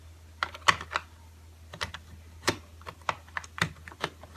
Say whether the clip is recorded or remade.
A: recorded